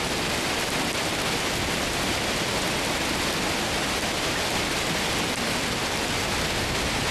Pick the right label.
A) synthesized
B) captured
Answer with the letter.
B